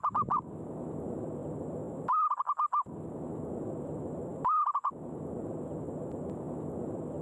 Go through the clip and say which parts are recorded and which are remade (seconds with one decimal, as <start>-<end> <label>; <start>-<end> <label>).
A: 0.0-7.2 recorded